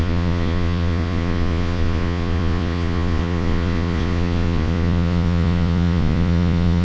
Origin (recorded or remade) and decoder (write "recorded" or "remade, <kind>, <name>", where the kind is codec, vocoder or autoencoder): remade, vocoder, Vocos